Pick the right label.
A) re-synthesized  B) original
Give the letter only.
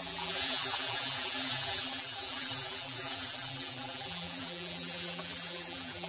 A